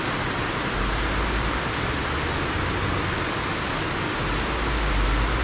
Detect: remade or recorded recorded